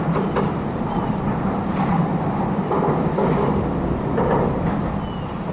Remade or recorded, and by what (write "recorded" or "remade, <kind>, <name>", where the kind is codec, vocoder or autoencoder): recorded